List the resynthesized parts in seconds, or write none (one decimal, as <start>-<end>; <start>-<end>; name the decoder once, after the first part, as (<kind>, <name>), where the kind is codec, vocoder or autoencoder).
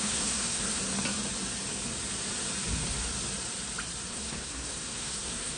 0.0-0.8 (codec, SNAC); 4.1-5.6